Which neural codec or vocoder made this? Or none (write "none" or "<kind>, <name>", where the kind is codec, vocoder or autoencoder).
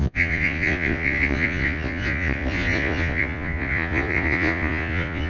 vocoder, Vocos